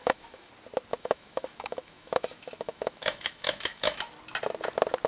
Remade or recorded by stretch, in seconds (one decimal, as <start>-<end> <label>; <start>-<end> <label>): 0.0-0.5 remade; 0.5-0.9 recorded; 0.9-4.0 remade; 4.0-5.1 recorded